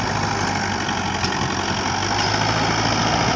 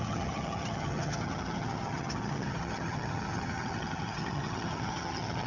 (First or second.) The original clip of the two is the first